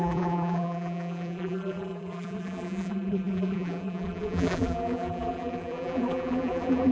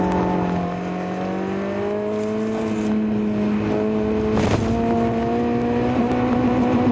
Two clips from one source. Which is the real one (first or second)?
second